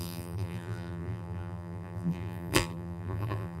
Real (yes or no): no